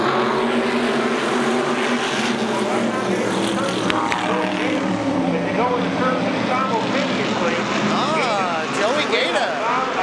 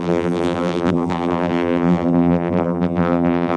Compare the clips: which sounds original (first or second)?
first